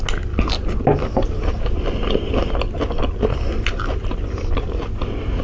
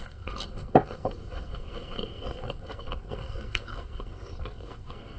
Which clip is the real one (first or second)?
first